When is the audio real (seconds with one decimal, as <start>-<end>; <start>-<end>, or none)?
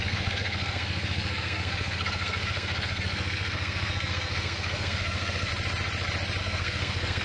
5.5-6.4